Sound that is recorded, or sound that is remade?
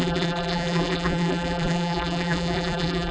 remade